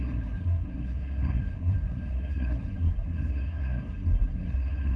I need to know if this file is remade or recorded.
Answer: remade